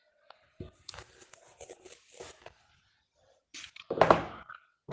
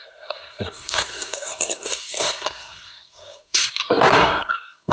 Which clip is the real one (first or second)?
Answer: first